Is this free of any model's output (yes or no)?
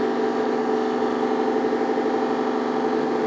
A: yes